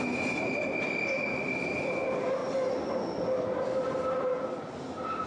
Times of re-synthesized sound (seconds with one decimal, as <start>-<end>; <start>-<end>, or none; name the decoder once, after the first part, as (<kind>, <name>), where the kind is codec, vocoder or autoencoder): none